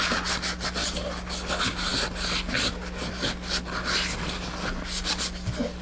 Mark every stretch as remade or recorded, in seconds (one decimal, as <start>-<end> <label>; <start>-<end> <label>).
0.0-5.8 recorded